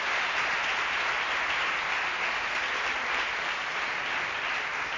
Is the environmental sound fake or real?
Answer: real